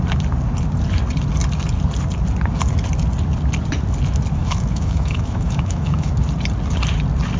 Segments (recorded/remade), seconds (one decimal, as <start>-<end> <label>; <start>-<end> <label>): 0.0-4.4 recorded; 4.4-6.1 remade; 6.1-7.4 recorded